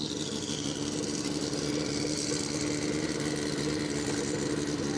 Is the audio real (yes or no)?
yes